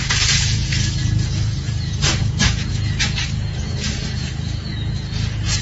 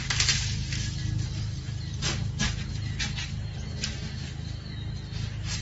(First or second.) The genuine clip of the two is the second